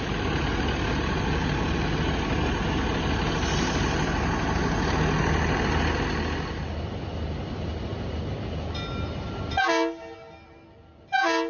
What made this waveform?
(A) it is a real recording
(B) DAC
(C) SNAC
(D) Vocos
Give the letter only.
A